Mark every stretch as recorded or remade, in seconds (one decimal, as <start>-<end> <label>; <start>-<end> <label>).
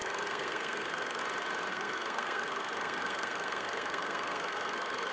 0.0-1.2 remade; 1.2-1.7 recorded; 1.7-5.1 remade